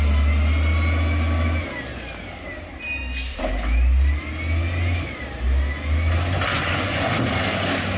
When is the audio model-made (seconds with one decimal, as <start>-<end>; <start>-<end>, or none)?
6.5-7.1